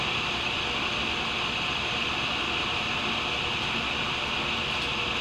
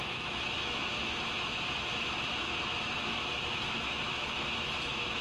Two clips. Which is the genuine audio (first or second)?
first